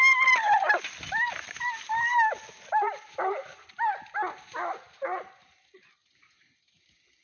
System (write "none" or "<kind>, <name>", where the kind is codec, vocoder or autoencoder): none